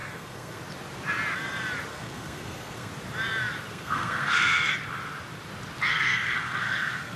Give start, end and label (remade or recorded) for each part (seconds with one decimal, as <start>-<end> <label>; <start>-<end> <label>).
0.0-0.6 remade; 0.6-1.9 recorded; 1.9-2.9 remade; 2.9-3.7 recorded; 3.7-4.7 remade; 4.7-5.9 recorded; 5.9-7.2 remade